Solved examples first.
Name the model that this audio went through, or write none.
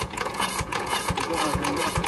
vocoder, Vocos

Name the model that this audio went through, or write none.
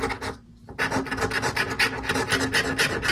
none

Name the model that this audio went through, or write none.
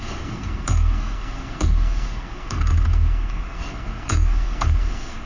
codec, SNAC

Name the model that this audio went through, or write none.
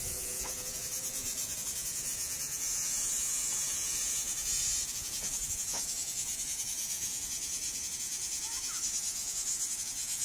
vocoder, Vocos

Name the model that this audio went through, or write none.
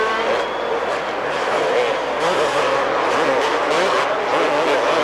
none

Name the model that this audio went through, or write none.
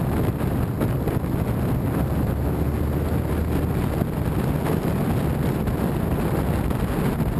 none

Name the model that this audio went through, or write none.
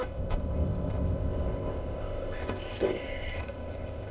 codec, ZipCodec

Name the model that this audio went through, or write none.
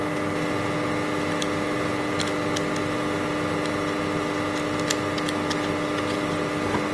none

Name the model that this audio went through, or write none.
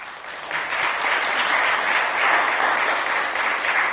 none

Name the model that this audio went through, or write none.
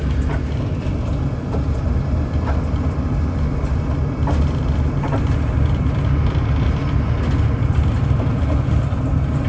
none